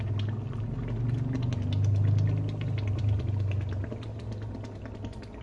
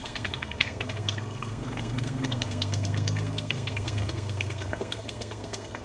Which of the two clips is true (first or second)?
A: first